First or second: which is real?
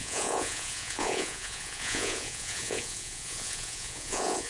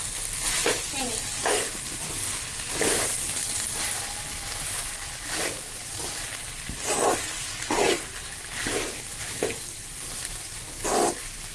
second